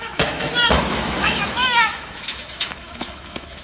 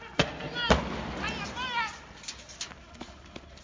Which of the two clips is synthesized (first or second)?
first